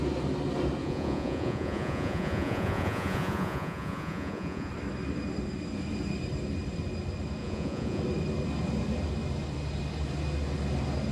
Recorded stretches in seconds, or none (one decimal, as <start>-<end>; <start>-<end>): 0.0-0.8; 4.7-7.4; 8.0-11.1